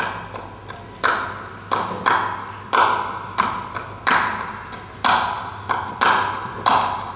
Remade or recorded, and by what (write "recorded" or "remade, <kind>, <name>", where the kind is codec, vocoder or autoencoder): recorded